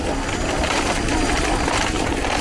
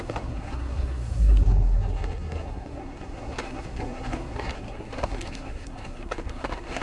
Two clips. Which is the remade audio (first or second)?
second